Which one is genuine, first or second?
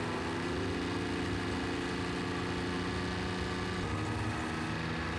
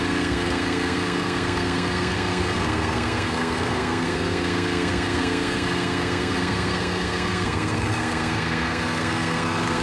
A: first